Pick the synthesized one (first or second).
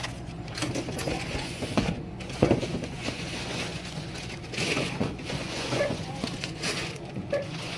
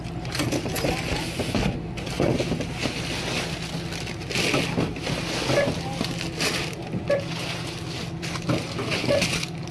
first